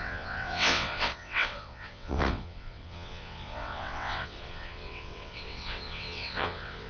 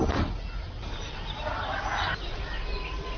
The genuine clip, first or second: second